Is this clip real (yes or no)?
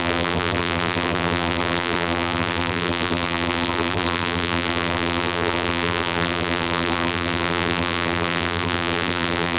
no